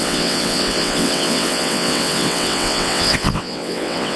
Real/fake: fake